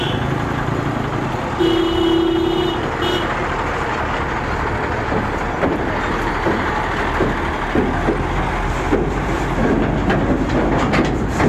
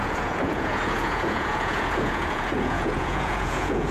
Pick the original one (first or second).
first